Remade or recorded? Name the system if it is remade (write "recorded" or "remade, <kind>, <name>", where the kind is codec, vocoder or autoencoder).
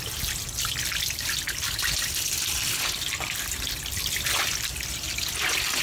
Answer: recorded